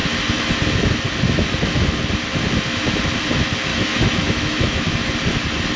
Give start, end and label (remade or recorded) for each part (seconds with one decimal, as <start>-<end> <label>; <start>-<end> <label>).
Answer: 0.0-3.7 recorded; 3.7-5.1 remade; 5.1-5.8 recorded